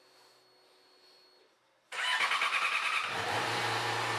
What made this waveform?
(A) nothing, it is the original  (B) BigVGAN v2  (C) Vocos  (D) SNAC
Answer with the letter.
A